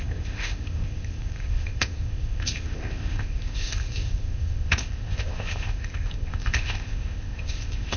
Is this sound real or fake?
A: fake